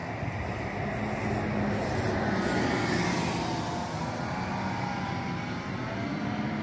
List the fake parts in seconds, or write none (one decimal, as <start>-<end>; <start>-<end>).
none